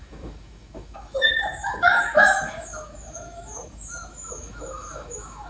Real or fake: fake